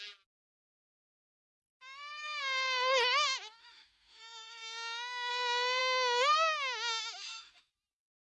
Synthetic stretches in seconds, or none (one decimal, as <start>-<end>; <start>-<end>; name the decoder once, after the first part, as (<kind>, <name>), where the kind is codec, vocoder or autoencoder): 1.6-2.4 (autoencoder, DAC-VAE); 3.6-5.3; 5.8-7.7